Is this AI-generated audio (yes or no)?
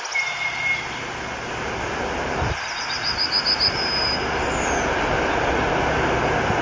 no